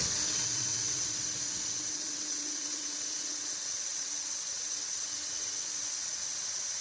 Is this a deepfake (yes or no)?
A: yes